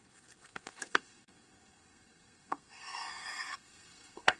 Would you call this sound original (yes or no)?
no